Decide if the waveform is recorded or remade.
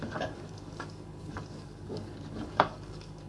remade